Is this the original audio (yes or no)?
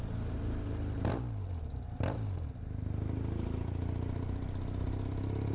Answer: yes